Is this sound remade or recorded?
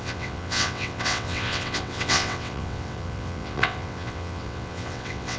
remade